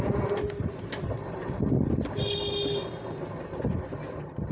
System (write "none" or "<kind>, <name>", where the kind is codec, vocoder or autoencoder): none